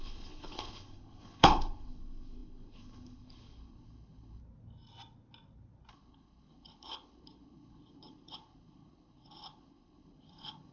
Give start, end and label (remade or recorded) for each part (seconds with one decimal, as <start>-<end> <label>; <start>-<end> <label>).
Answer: 0.0-4.4 remade; 4.4-5.9 recorded; 5.9-10.7 remade